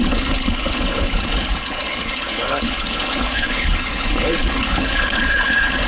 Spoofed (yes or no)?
yes